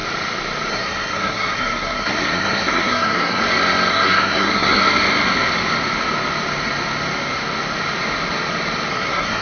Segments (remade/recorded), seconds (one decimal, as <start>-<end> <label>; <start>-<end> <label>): 0.0-0.7 recorded; 0.7-3.4 remade; 3.4-3.9 recorded; 3.9-4.8 remade; 4.8-8.9 recorded; 8.9-9.4 remade